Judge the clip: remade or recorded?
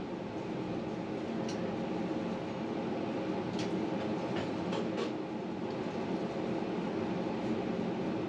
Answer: recorded